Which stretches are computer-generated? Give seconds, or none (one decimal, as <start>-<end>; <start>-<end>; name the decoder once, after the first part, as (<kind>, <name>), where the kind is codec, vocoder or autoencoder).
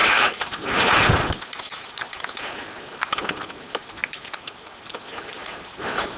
0.0-0.8 (vocoder, BigVGAN v2); 4.0-5.0; 5.5-6.2